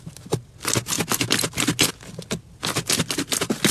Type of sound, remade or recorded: recorded